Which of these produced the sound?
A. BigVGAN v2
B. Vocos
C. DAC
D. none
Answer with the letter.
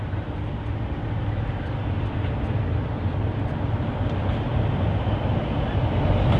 D